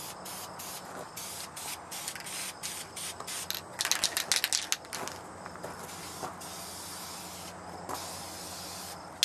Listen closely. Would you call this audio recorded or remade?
recorded